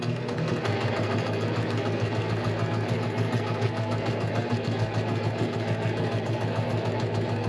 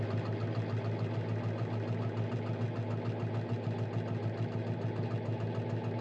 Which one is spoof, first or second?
first